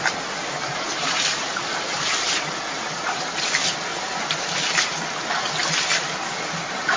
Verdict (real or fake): real